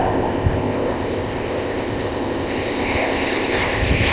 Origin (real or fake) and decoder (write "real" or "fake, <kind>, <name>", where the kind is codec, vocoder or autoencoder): fake, codec, ZipCodec